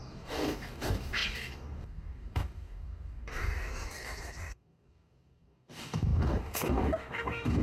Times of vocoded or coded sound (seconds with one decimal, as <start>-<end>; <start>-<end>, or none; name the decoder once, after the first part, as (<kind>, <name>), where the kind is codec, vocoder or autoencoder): 0.0-7.6 (codec, DAC)